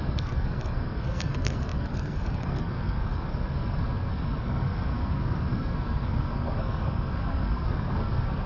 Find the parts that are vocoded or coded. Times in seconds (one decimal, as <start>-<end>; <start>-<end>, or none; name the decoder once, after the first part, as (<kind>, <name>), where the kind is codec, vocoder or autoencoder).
0.0-8.5 (codec, SNAC)